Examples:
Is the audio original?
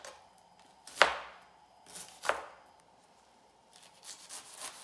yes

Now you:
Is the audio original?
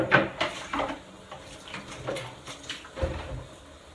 yes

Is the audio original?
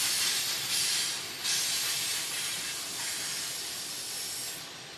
no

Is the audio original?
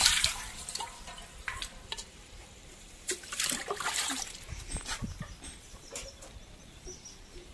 no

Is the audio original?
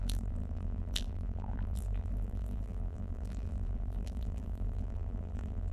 no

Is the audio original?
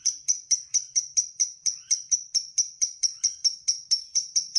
no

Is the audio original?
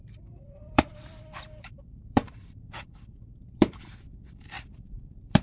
no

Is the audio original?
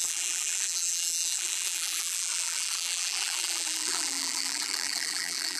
no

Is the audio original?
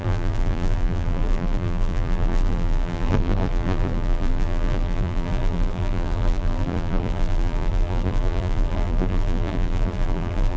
no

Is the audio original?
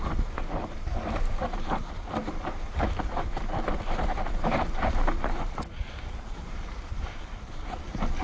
no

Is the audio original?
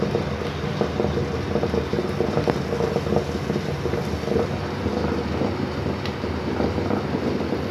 yes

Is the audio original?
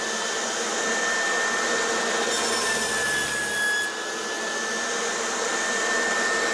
yes